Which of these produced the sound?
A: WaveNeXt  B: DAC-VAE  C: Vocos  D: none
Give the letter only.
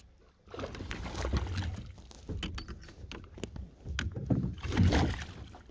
D